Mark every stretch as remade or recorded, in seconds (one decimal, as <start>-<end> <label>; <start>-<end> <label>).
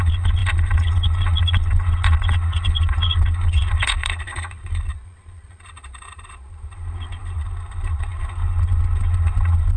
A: 0.0-9.8 remade